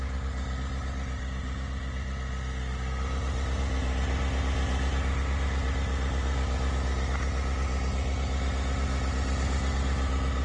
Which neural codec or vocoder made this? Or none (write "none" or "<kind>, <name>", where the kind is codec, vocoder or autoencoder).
none